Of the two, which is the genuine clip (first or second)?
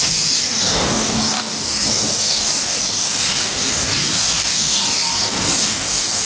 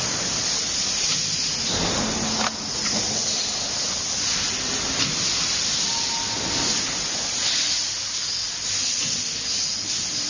second